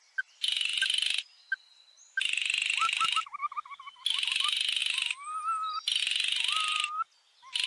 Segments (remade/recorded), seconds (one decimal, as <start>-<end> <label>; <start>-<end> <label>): 0.0-7.7 recorded